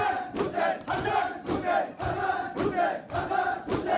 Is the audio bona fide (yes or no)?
yes